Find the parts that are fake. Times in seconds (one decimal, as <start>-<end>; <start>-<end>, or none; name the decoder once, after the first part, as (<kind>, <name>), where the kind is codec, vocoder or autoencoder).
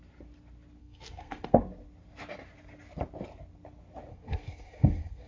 0.8-1.6 (codec, SNAC); 4.1-5.3